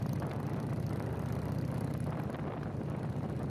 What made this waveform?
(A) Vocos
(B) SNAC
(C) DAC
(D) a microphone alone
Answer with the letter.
D